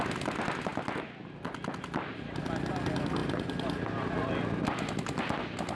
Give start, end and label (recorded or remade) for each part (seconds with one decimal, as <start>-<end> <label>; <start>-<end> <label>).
0.0-5.8 recorded